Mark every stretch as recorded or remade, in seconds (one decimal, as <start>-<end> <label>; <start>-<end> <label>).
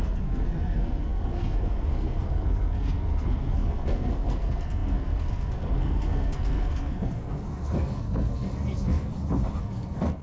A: 0.0-9.1 remade; 9.1-9.6 recorded; 9.6-10.2 remade